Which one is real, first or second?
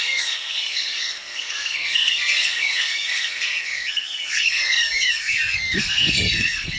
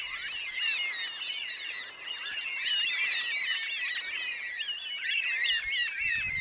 second